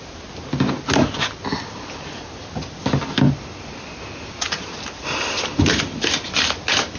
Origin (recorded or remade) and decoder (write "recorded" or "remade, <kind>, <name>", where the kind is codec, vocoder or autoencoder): recorded